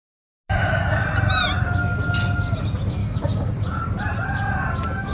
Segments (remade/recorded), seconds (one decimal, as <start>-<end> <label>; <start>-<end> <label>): 0.0-3.0 recorded; 3.0-3.5 remade; 3.5-5.1 recorded